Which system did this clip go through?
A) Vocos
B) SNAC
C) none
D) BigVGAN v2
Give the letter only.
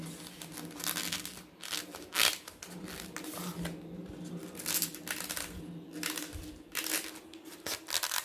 C